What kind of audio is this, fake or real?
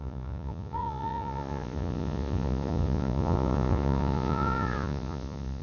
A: fake